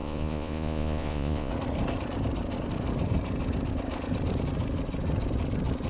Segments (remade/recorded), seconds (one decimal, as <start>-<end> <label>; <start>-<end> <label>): 0.0-1.5 remade; 1.5-5.9 recorded